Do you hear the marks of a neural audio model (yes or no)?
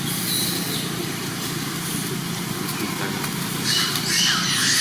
no